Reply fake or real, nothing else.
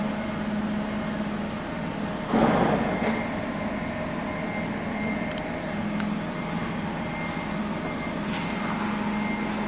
real